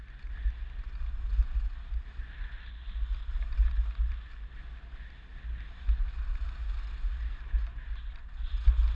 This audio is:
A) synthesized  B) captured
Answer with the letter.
B